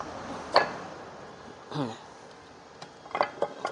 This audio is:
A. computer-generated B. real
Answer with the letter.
B